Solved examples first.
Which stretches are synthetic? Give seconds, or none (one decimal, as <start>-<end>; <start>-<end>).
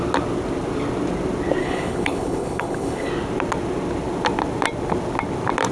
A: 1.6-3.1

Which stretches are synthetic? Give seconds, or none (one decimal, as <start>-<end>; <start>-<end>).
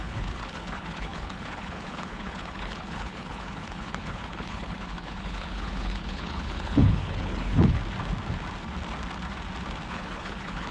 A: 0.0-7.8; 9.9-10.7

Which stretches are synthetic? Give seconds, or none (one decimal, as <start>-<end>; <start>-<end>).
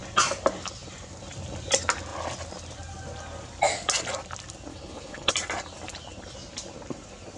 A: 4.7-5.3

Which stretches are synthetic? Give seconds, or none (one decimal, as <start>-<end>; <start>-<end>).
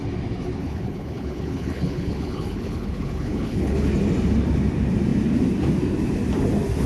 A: 0.6-3.9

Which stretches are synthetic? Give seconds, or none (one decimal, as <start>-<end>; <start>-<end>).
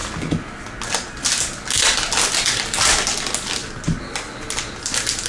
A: none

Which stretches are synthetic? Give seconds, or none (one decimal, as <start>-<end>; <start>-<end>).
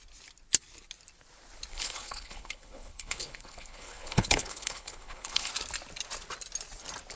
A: 1.7-5.5